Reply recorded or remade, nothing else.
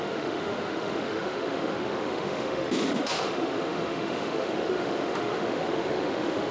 remade